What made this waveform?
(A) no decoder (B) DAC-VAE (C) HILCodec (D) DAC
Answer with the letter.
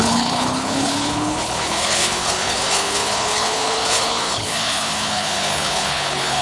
C